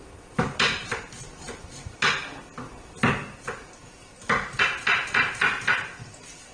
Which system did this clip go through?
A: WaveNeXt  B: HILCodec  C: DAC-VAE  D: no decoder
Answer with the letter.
D